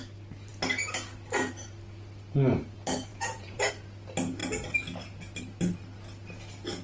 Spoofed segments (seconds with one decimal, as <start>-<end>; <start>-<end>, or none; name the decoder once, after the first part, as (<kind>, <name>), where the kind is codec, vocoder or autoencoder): 3.1-3.7 (vocoder, Vocos)